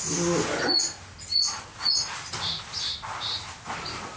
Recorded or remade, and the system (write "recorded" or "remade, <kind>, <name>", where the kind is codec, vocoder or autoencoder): recorded